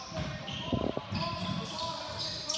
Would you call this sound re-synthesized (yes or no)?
no